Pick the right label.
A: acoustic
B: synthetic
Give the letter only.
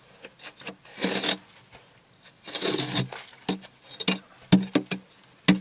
A